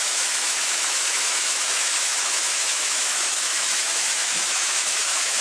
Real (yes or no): no